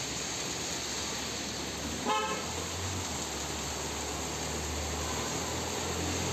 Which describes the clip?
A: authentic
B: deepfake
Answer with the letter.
A